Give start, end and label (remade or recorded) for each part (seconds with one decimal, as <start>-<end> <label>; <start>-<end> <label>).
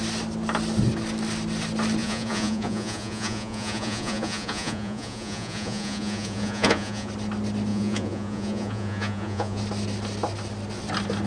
0.0-2.0 recorded; 2.0-7.1 remade; 7.1-7.7 recorded; 7.7-9.6 remade; 9.6-11.3 recorded